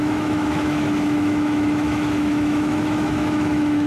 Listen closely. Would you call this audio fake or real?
fake